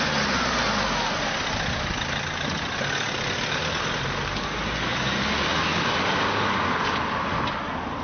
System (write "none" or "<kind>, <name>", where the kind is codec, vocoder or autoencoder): none